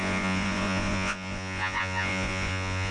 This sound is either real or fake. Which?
fake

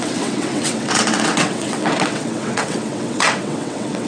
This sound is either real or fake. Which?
fake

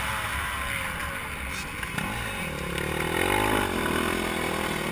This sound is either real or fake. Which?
real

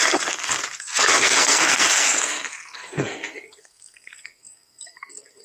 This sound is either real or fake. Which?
fake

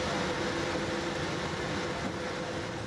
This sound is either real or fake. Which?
real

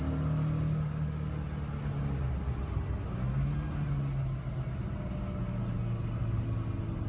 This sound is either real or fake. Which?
real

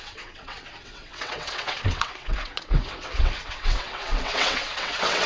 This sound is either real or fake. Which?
fake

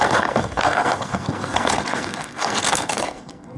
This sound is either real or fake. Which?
fake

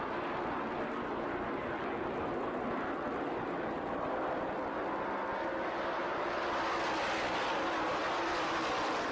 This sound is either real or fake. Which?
real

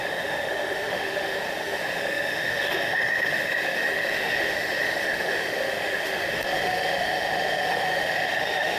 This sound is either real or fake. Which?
fake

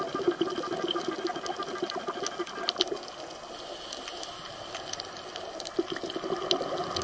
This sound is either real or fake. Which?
real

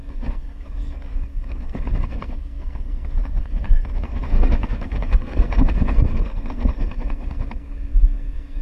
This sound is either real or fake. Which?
fake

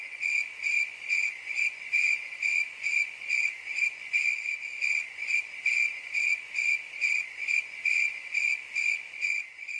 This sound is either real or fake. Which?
fake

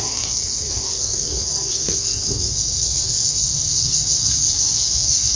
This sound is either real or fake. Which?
fake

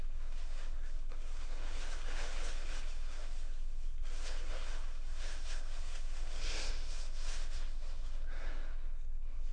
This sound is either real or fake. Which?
fake